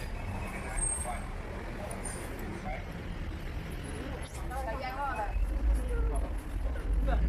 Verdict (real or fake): real